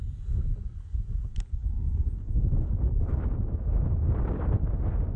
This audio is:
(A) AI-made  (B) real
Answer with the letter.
B